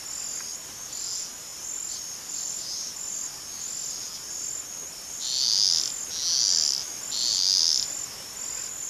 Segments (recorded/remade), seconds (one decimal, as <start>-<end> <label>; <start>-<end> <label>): 0.0-1.5 recorded; 1.5-3.0 remade; 3.0-8.9 recorded